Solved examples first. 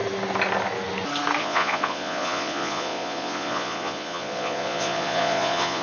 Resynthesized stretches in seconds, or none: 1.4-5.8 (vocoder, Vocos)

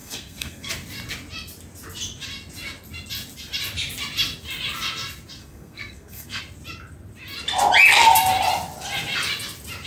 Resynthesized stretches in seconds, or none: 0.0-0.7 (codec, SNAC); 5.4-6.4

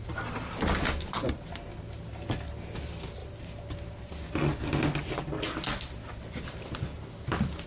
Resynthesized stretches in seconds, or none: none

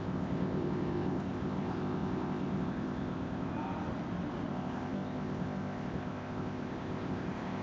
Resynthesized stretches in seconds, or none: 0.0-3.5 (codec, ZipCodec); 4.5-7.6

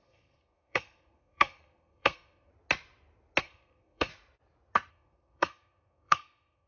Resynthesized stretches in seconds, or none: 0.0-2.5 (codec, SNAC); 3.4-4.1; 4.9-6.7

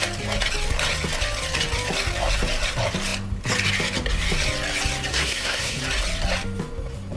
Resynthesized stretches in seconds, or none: 5.1-5.8 (codec, SNAC)

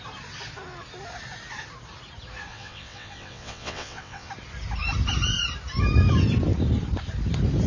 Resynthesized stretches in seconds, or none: 2.5-4.3 (vocoder, WaveNeXt)